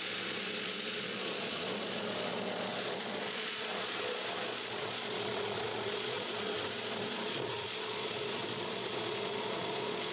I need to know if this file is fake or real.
fake